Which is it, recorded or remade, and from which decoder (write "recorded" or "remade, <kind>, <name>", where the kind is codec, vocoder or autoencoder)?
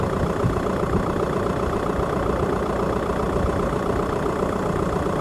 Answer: remade, vocoder, BigVGAN v2